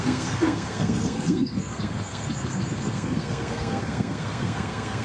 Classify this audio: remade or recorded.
remade